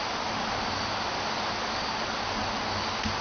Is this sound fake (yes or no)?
no